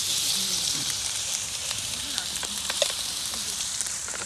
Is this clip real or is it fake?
fake